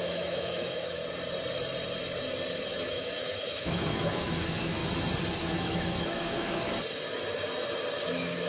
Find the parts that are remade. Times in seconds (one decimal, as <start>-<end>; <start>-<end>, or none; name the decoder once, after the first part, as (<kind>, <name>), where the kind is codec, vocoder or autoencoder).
0.0-1.0 (autoencoder, DAC-VAE); 2.9-4.8; 5.5-6.7; 8.0-8.5